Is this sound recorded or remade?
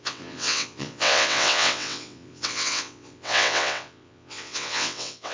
remade